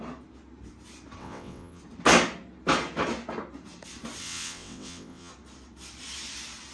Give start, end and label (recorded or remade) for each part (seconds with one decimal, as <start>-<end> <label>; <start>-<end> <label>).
0.0-1.2 recorded; 1.2-1.8 remade; 1.8-4.2 recorded; 4.2-5.3 remade; 5.3-6.7 recorded